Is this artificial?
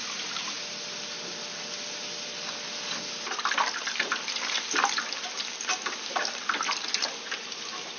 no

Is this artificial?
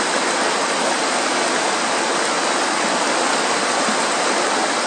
no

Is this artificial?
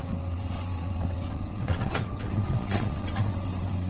yes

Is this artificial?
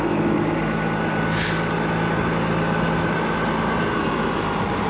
no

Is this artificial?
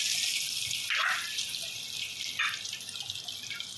no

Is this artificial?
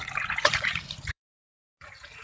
yes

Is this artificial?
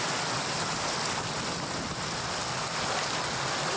no